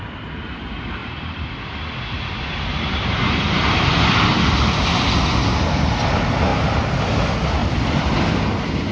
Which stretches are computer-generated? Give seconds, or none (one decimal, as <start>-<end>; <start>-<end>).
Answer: 6.5-7.0